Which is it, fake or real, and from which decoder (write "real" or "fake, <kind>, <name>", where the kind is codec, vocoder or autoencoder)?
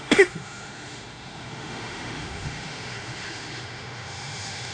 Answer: fake, autoencoder, DAC-VAE